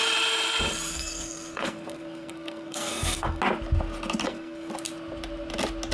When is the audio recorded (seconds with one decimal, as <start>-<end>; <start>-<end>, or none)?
0.0-0.9; 3.4-4.2; 4.7-5.9